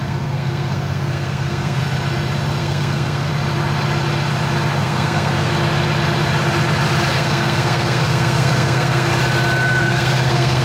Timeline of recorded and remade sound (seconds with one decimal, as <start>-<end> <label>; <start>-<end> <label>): 0.0-1.8 remade; 1.8-2.6 recorded; 2.6-3.3 remade; 3.3-4.8 recorded; 4.8-5.5 remade; 5.5-7.1 recorded; 7.1-9.1 remade; 9.1-9.8 recorded; 9.8-10.6 remade